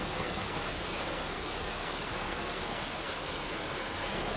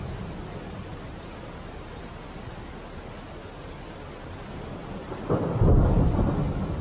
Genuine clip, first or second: second